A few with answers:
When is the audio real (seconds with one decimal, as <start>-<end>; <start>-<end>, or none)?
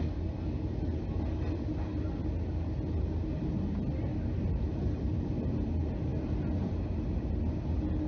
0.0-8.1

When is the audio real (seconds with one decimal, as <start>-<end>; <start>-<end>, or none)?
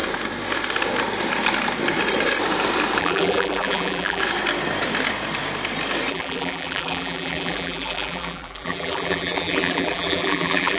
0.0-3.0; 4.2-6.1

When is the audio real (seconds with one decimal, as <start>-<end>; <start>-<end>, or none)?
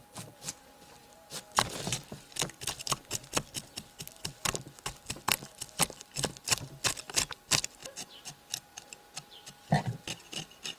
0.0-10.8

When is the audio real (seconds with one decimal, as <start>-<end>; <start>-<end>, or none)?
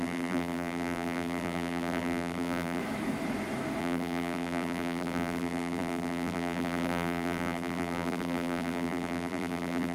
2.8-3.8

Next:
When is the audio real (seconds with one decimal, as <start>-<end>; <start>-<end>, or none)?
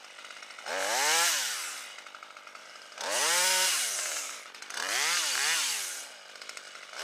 0.0-2.6; 4.6-7.0